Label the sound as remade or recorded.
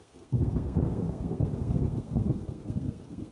remade